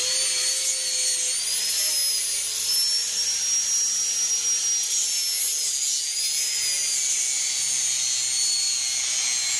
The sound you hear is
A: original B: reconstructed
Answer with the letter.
A